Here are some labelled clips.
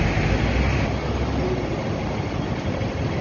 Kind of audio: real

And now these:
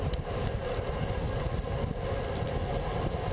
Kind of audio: real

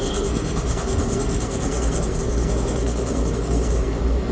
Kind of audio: fake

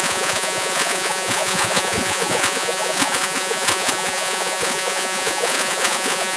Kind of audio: fake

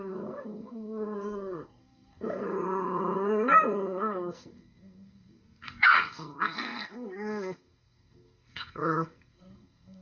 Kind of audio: fake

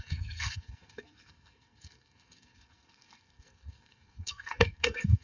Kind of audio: fake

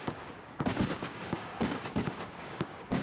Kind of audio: fake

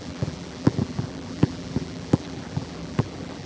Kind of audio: fake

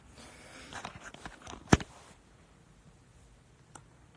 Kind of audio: real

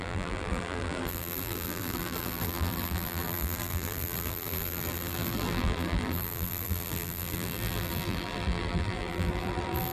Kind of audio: fake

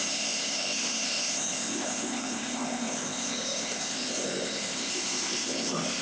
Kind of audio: fake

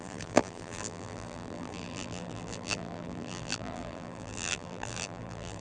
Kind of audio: fake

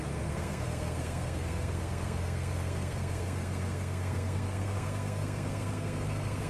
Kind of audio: fake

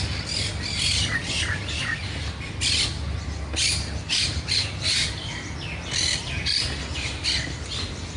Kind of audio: real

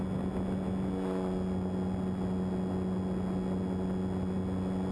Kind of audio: real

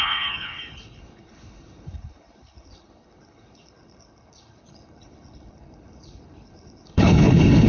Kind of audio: fake